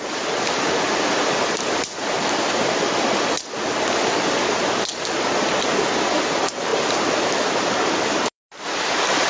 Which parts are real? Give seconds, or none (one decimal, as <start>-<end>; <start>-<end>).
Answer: 0.0-6.7; 8.6-9.3

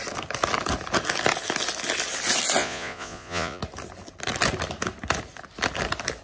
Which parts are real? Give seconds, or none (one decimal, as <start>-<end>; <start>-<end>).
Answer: 0.0-2.6; 3.6-6.2

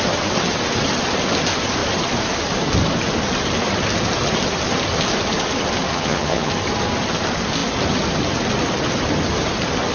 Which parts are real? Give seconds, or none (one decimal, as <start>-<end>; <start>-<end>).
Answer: 0.0-5.9; 6.5-9.9

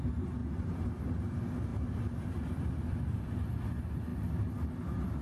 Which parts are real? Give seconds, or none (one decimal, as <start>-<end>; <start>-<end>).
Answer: 0.0-0.4; 1.0-1.7; 3.0-5.2

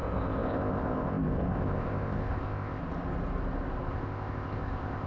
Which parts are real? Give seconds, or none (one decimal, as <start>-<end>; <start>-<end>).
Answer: 2.8-3.9

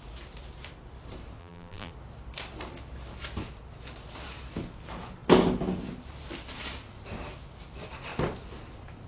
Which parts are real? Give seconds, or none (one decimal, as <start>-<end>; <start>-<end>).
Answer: 0.0-1.4; 1.9-9.1

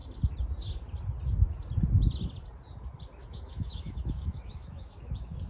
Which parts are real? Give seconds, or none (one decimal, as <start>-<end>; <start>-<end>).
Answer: 0.0-3.3

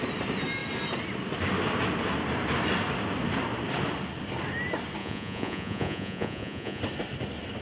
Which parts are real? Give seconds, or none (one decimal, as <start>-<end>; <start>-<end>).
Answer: 0.0-5.0; 6.8-7.6